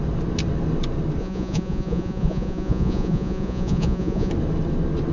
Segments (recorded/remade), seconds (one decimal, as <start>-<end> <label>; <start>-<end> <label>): 0.0-1.2 recorded; 1.2-4.3 remade; 4.3-5.1 recorded